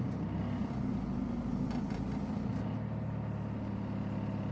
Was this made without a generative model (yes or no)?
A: yes